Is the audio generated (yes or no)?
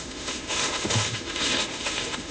yes